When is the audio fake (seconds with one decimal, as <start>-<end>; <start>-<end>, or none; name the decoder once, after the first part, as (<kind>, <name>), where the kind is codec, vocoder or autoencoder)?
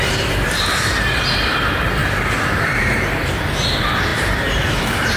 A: 0.0-2.0 (vocoder, BigVGAN v2); 2.6-5.2